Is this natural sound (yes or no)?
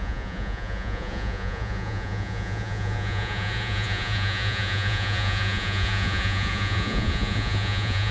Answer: no